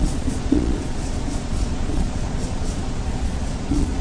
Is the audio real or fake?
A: fake